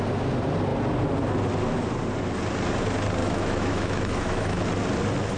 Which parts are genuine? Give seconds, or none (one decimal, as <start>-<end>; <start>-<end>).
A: 0.0-3.2; 4.6-5.4